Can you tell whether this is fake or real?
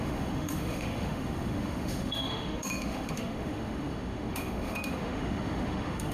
fake